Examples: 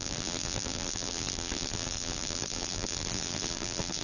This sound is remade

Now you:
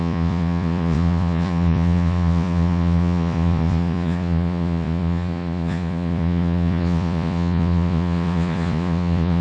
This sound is remade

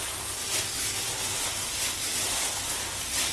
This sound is recorded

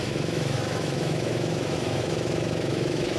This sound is remade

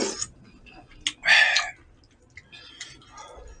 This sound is recorded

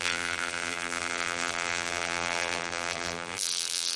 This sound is remade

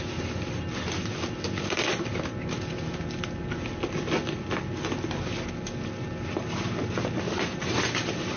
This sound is recorded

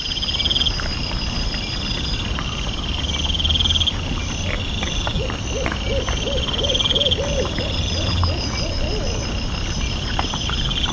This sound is recorded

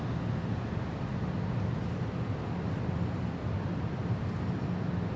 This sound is recorded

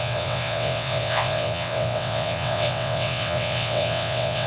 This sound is remade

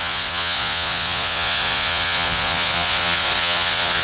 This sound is remade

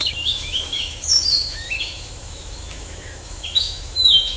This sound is remade